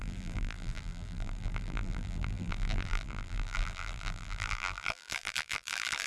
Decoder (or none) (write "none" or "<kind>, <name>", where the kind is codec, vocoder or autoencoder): vocoder, BigVGAN v2